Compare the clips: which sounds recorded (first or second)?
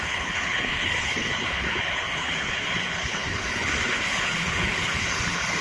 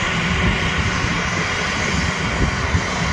second